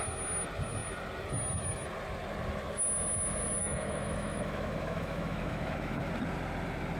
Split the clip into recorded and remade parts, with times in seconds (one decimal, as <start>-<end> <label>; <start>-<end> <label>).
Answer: 0.0-3.6 recorded; 3.6-6.1 remade; 6.1-7.0 recorded